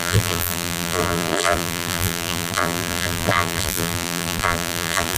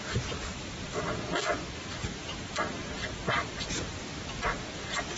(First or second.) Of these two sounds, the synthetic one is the first